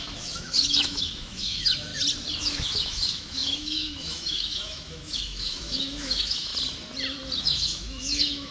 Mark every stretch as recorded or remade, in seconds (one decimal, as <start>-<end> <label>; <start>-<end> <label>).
0.0-1.9 remade; 1.9-2.4 recorded; 2.4-6.5 remade; 6.5-7.4 recorded; 7.4-8.5 remade